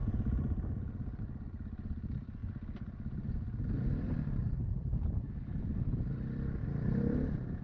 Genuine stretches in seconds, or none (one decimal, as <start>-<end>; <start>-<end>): 0.0-1.2; 2.4-5.6; 6.6-7.6